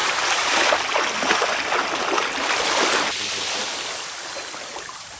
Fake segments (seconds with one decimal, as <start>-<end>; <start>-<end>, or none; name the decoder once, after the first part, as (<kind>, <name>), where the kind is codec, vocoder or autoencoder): 0.0-0.7 (vocoder, BigVGAN v2)